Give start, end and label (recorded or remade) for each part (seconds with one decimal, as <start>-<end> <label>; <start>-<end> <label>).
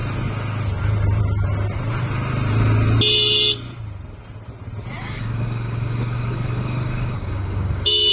0.0-5.0 recorded; 5.0-8.1 remade